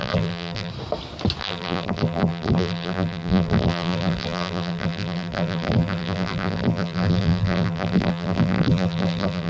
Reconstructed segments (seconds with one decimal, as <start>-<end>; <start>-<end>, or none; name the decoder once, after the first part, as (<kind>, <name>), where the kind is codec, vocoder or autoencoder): 0.0-0.7 (vocoder, BigVGAN v2); 1.4-9.5